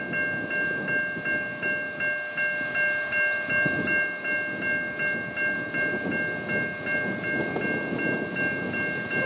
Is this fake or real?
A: real